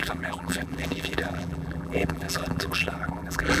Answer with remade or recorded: remade